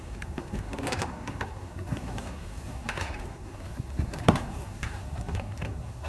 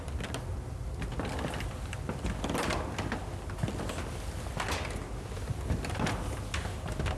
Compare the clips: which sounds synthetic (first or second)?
first